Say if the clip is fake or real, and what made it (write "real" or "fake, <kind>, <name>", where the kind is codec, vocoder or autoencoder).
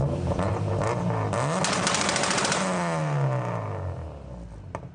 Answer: real